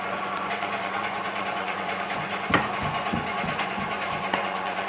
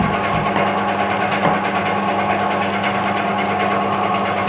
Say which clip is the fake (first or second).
first